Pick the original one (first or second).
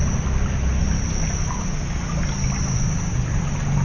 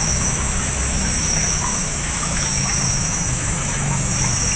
first